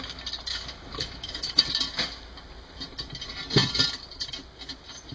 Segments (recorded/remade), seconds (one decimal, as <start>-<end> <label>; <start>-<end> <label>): 0.0-0.5 recorded; 0.5-1.6 remade; 1.6-5.1 recorded